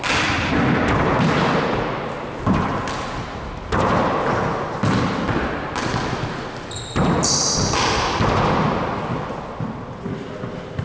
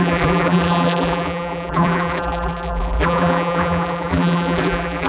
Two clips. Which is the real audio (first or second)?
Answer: first